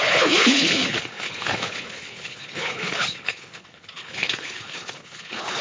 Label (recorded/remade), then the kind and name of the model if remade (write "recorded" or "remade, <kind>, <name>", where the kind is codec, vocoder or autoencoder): remade, codec, HILCodec